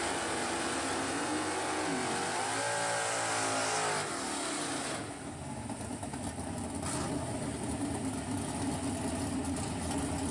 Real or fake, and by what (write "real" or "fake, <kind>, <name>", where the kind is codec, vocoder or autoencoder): real